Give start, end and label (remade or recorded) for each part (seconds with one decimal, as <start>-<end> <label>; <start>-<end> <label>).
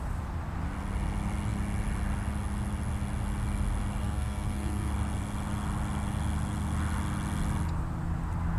0.0-4.0 recorded; 4.0-4.9 remade; 4.9-8.6 recorded